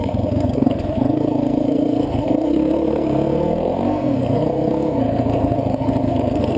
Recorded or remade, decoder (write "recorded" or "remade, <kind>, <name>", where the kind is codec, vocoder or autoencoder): remade, codec, SNAC